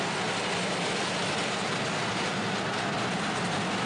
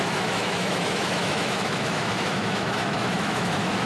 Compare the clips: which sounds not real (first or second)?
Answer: second